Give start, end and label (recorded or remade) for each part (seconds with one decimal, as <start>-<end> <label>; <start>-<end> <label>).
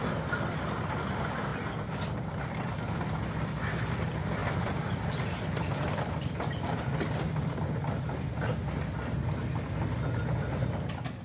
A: 0.0-1.5 recorded; 1.5-2.9 remade; 2.9-4.4 recorded; 4.4-6.6 remade; 6.6-11.2 recorded